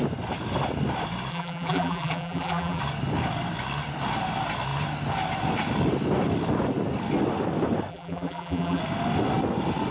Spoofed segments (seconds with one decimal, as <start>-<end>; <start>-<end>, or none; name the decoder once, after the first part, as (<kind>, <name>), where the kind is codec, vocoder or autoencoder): 1.3-2.8 (vocoder, BigVGAN v2); 7.9-8.8